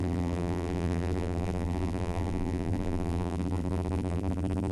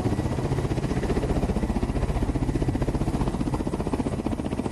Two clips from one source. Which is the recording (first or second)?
second